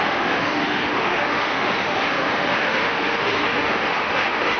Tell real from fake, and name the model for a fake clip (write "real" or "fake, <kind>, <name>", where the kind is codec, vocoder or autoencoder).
fake, autoencoder, DAC-VAE